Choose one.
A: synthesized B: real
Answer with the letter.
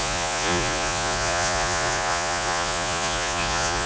A